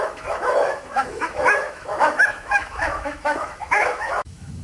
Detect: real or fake fake